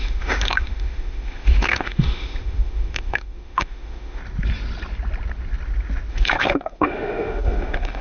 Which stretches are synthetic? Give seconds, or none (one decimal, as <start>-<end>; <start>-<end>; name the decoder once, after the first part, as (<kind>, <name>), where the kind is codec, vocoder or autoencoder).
0.0-4.2 (autoencoder, DAC-VAE); 6.1-8.0